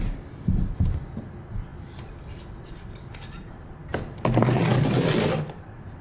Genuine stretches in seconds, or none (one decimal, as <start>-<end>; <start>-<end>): 0.0-6.0